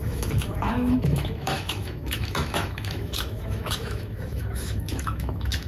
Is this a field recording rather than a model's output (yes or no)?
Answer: no